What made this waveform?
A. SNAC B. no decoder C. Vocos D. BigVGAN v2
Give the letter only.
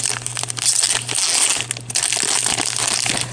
B